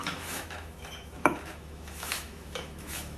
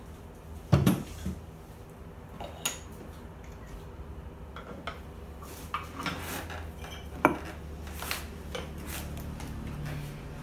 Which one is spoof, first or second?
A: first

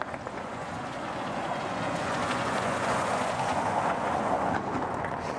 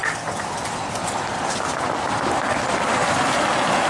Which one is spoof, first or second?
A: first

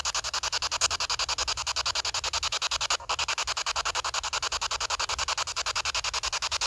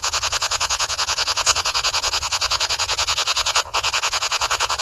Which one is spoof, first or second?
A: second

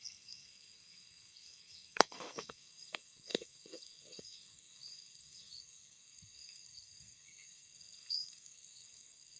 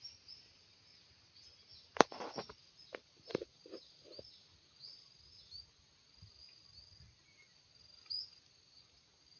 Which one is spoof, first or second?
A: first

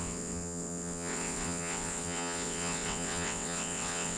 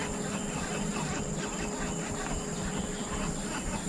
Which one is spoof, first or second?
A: first